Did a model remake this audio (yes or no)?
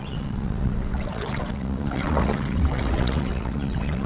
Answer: yes